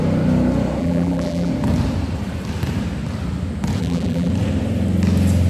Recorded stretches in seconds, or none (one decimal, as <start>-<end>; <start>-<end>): 0.0-0.8; 1.5-3.8; 4.3-5.5